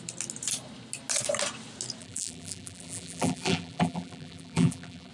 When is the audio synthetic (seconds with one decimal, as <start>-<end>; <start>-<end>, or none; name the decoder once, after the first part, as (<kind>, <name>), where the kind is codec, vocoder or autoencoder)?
2.0-5.1 (vocoder, BigVGAN v2)